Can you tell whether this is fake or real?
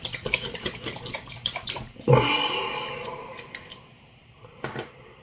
fake